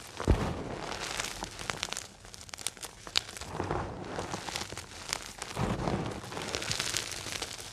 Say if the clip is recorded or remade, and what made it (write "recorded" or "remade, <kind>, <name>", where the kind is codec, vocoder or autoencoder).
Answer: recorded